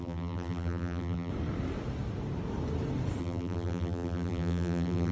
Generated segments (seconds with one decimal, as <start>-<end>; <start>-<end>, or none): 0.0-1.3; 3.2-5.1